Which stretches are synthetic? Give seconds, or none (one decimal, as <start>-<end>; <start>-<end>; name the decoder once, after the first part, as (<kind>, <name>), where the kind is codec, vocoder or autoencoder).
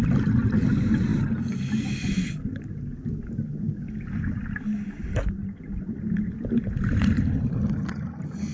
none